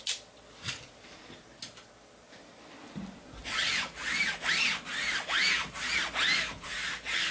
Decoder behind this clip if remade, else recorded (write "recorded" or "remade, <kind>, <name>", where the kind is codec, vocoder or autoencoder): recorded